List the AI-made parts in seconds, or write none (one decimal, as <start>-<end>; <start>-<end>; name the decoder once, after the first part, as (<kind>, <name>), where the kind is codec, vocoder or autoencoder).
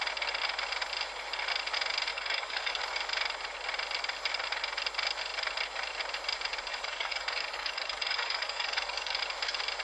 2.1-2.8 (codec, DAC); 6.7-9.2